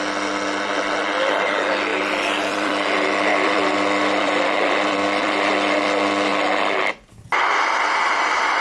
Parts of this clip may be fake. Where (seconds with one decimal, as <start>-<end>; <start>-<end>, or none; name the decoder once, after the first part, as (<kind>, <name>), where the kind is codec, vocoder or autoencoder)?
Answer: 1.9-5.5 (vocoder, BigVGAN v2)

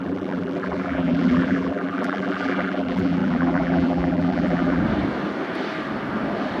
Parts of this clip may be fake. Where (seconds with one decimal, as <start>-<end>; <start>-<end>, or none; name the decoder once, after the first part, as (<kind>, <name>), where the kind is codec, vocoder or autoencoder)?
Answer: 0.0-4.8 (vocoder, BigVGAN v2)

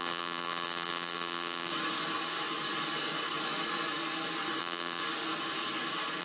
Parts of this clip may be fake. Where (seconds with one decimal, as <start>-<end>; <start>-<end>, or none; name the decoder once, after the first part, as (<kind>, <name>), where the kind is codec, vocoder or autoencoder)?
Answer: 0.0-1.7 (vocoder, BigVGAN v2); 4.6-5.0

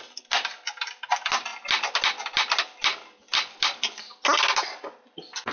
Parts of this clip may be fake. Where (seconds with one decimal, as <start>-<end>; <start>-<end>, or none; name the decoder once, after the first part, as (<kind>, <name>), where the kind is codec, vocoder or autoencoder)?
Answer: none

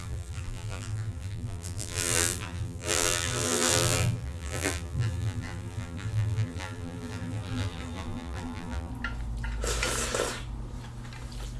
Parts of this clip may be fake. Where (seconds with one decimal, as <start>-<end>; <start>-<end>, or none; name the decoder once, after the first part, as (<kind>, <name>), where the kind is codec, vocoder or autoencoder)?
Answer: 0.0-8.9 (vocoder, BigVGAN v2)

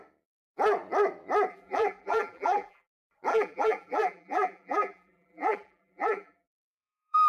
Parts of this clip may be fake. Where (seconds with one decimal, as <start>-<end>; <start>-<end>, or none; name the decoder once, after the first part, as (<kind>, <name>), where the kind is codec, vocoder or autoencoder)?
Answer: 1.5-2.9 (vocoder, BigVGAN v2); 3.3-7.3